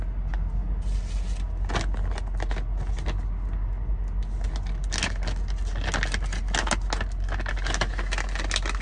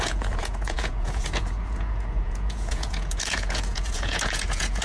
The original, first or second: first